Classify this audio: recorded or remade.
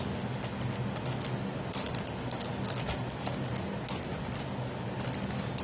recorded